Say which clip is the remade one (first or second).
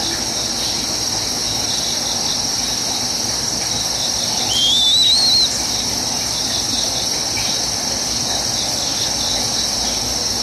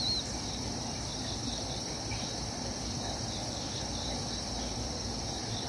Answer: second